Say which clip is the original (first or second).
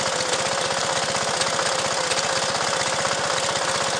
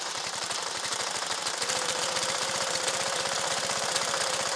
first